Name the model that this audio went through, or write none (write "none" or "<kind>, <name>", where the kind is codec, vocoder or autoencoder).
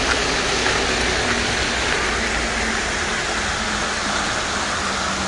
none